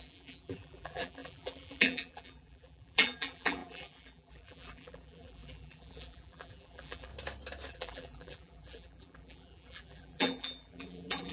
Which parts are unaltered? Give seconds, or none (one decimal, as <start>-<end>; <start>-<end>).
7.1-7.7